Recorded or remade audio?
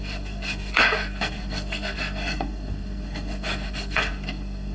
remade